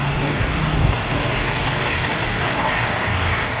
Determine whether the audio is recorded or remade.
remade